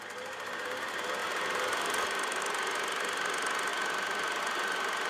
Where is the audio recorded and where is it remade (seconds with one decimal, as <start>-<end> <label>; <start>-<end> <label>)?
0.0-1.2 recorded; 1.2-2.4 remade; 2.4-5.1 recorded